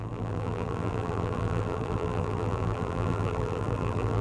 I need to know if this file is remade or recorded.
remade